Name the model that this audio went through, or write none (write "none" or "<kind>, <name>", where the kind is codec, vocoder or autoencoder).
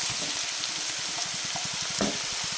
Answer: none